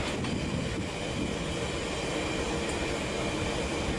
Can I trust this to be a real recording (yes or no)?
yes